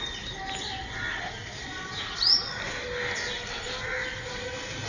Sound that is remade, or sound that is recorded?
recorded